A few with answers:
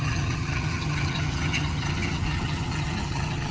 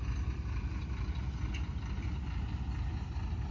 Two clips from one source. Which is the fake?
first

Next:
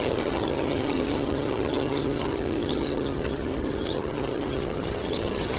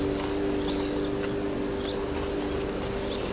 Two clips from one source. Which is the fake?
first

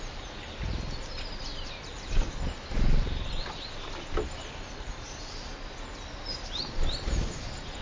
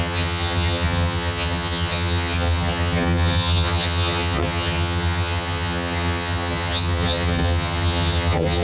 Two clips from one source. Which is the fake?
second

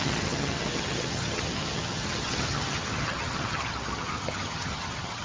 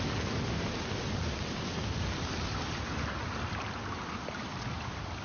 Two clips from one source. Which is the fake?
first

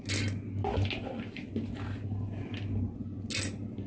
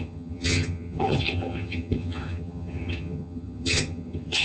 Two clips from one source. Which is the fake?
second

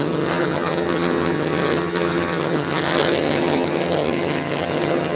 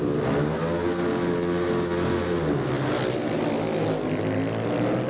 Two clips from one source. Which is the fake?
first